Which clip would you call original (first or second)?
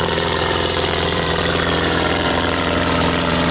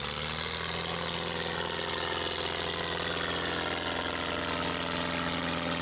second